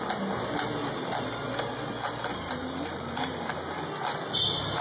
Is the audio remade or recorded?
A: recorded